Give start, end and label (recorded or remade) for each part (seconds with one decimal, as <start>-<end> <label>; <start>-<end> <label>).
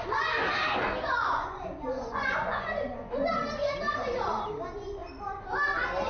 0.0-1.2 recorded; 1.2-3.3 remade; 3.3-6.1 recorded